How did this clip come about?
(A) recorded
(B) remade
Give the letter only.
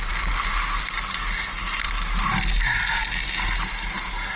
A